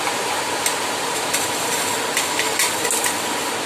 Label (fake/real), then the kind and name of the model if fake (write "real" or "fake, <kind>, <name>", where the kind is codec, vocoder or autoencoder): real